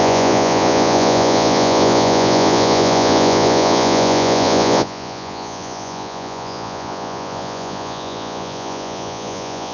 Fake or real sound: fake